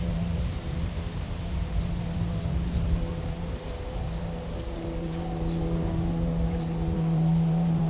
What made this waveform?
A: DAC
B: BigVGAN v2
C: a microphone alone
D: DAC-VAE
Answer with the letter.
B